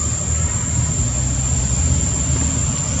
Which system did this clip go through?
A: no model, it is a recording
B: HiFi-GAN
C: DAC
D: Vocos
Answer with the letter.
A